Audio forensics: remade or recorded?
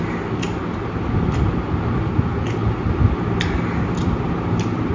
recorded